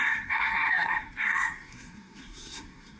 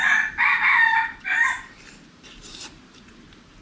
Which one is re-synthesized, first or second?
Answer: first